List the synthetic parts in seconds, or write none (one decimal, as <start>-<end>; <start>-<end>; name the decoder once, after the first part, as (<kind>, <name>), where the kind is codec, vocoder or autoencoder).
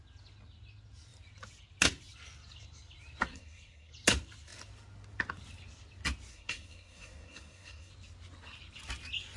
3.3-3.9 (codec, SNAC); 6.3-7.9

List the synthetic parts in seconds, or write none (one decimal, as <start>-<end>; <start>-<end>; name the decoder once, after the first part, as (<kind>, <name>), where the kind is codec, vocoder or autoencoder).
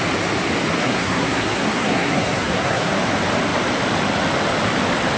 0.8-2.9 (codec, SNAC)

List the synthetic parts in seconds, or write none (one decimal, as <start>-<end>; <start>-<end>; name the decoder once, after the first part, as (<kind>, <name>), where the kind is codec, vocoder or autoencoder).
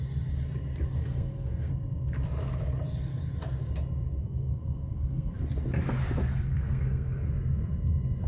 1.0-1.7 (codec, SNAC); 4.2-5.4; 6.3-7.3